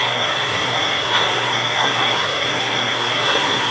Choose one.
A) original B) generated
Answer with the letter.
B